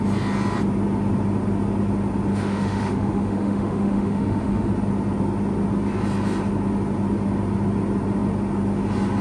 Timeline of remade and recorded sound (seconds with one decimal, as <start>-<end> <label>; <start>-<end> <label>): 0.0-2.3 recorded; 2.3-4.7 remade; 4.7-9.2 recorded